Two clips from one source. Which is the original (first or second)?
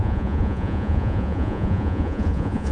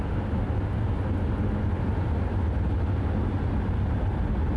second